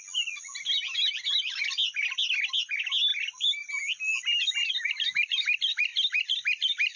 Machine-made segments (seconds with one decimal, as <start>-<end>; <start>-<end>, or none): none